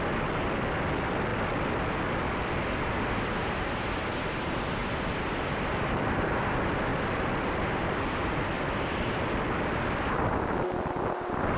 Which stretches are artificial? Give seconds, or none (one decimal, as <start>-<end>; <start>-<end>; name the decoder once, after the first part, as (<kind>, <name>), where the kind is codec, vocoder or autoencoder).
4.8-6.2 (vocoder, BigVGAN v2); 6.9-9.4